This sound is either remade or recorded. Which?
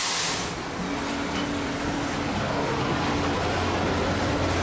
recorded